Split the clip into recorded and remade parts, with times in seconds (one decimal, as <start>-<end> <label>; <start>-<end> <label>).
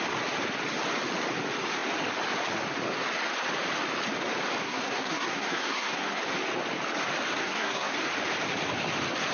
0.0-4.6 recorded; 4.6-6.2 remade; 6.2-7.4 recorded; 7.4-7.9 remade; 7.9-9.3 recorded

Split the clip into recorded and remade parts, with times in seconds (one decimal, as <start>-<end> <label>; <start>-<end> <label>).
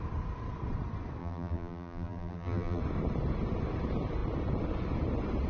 0.0-1.2 recorded; 1.2-2.8 remade; 2.8-5.5 recorded